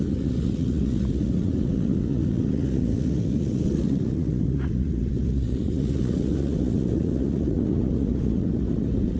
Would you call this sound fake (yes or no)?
yes